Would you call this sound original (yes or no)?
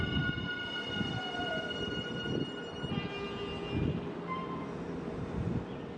yes